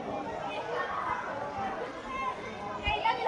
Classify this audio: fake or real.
real